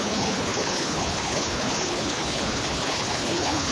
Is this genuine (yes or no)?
no